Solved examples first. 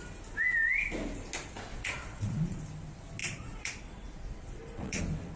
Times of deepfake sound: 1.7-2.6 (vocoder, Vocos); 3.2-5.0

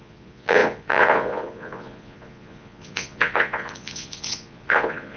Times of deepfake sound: 0.0-5.2 (vocoder, Vocos)

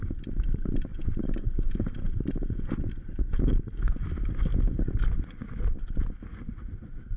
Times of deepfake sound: none

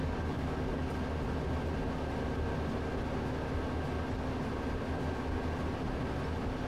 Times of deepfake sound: 0.0-0.9 (codec, DAC)

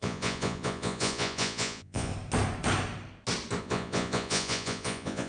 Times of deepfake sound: 0.0-2.1 (vocoder, Vocos); 3.6-5.3

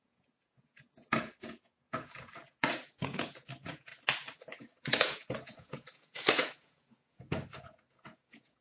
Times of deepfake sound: 0.0-3.9 (vocoder, Vocos); 4.6-8.6